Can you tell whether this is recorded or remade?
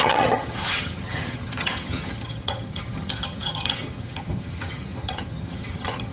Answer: remade